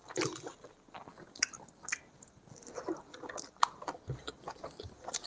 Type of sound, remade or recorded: recorded